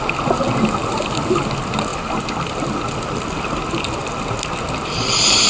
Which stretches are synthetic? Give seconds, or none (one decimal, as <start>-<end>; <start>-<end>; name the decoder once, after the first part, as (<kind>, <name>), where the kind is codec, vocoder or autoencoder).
none